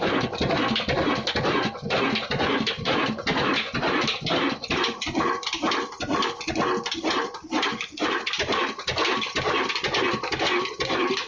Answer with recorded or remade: recorded